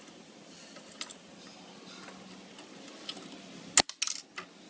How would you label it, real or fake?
real